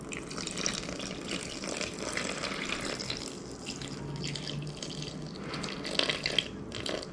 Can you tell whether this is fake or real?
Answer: real